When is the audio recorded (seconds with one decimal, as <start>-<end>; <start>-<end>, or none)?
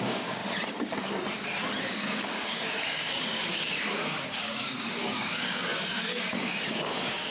0.4-1.8